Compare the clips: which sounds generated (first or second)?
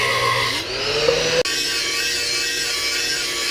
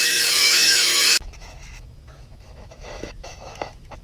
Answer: second